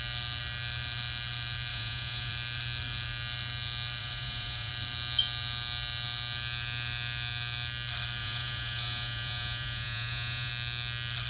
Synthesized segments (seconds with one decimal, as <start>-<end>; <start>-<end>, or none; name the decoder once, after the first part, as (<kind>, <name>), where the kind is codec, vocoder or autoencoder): 1.7-2.3 (vocoder, Vocos); 4.0-4.7; 8.2-10.5